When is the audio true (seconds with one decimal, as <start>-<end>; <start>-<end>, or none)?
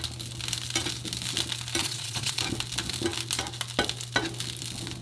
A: 0.0-1.8; 2.4-5.0